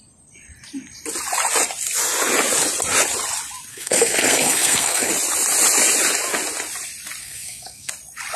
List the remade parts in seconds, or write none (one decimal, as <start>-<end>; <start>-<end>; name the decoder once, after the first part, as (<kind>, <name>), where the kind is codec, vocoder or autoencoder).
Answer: 3.7-5.1 (codec, SNAC); 7.2-7.9